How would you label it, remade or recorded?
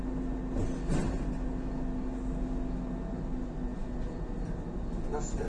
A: recorded